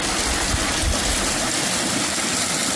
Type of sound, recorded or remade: recorded